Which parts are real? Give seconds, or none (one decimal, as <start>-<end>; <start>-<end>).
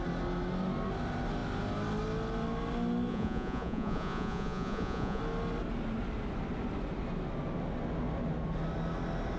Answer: 0.0-3.1; 5.2-9.4